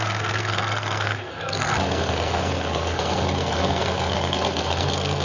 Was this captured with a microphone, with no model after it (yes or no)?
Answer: no